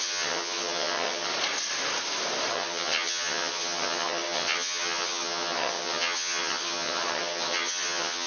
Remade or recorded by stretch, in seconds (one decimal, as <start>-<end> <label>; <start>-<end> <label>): 0.0-1.3 remade; 1.3-2.5 recorded; 2.5-8.3 remade